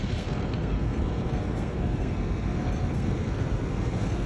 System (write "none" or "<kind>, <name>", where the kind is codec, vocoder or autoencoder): codec, SNAC